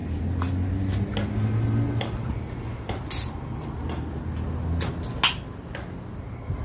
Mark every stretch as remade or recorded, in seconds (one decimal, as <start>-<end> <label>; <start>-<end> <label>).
0.0-6.6 recorded